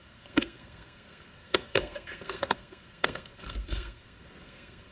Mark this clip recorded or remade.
remade